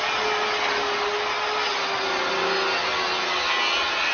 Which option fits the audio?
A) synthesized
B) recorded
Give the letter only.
B